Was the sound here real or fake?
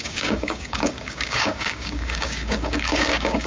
fake